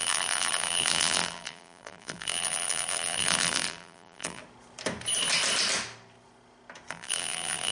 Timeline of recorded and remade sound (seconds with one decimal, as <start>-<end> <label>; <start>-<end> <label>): 0.0-4.4 remade; 4.4-6.9 recorded; 6.9-7.7 remade